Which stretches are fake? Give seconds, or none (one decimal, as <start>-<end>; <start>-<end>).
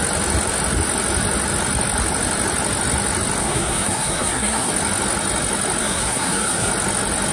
3.4-4.7; 5.8-6.7